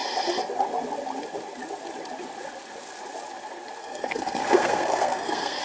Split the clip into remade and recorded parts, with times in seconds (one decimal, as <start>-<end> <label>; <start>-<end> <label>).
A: 0.0-3.8 recorded; 3.8-5.6 remade